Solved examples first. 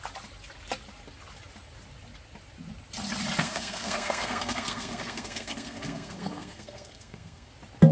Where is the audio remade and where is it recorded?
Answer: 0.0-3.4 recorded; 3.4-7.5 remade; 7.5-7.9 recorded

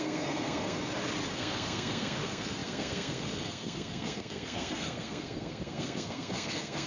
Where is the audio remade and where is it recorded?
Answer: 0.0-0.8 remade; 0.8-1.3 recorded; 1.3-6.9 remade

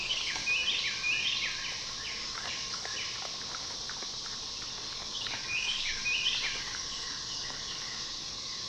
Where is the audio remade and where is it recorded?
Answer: 0.0-0.4 remade; 0.4-2.0 recorded; 2.0-2.9 remade; 2.9-4.7 recorded; 4.7-6.0 remade; 6.0-6.6 recorded; 6.6-8.7 remade

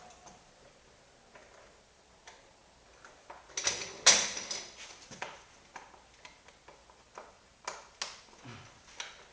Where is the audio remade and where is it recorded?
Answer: 0.0-9.3 recorded